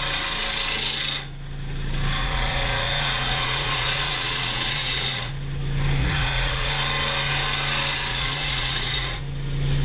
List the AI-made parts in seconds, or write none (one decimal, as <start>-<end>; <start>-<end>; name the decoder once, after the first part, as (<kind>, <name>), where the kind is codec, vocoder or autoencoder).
2.2-5.3 (vocoder, Vocos); 6.0-6.7; 8.1-9.2